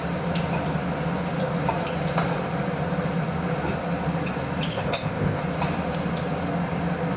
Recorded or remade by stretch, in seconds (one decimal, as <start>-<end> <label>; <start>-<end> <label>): 0.0-4.7 recorded; 4.7-5.4 remade; 5.4-7.2 recorded